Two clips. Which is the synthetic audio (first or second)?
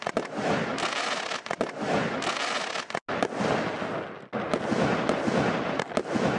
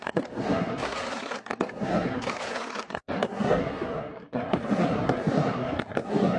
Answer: second